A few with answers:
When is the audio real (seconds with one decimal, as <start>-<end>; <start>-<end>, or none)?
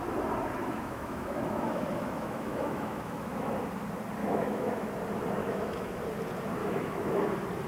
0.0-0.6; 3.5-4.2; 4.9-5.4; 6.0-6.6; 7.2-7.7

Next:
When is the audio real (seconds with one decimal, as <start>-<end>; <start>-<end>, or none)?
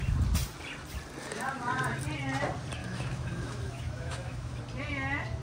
0.0-2.8; 4.6-5.4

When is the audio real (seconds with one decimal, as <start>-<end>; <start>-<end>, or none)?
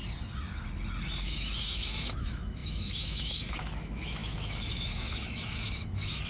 0.0-1.2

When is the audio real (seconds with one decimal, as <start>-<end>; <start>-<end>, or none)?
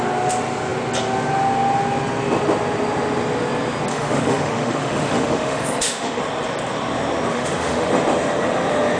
0.0-3.9; 6.2-7.3; 7.9-9.0